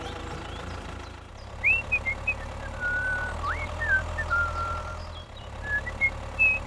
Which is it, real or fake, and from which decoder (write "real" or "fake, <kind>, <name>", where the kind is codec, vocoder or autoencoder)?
fake, vocoder, BigVGAN v2